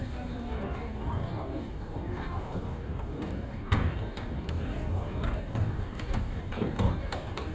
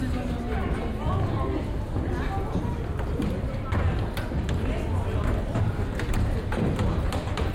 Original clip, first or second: second